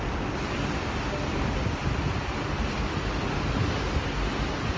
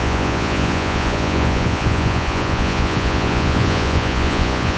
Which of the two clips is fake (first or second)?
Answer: second